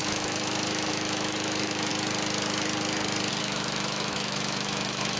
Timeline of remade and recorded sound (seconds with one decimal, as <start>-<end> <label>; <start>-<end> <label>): 0.0-1.9 remade; 1.9-3.4 recorded; 3.4-5.2 remade